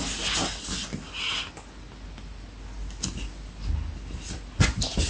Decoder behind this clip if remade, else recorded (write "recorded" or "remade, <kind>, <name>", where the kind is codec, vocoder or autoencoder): recorded